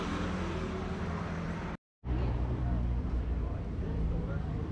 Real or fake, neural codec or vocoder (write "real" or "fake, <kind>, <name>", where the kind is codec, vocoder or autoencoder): fake, vocoder, BigVGAN v2